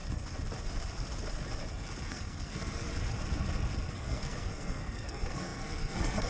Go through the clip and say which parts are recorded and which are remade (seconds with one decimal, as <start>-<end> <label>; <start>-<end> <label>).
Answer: 0.0-2.1 recorded; 2.1-2.9 remade; 2.9-3.9 recorded; 3.9-6.3 remade